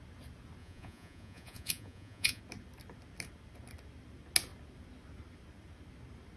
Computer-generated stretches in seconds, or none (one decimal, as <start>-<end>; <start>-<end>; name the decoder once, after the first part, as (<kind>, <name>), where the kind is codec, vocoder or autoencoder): 0.6-2.4 (vocoder, Vocos)